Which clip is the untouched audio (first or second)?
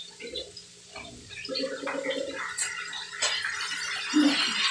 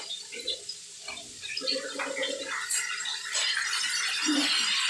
first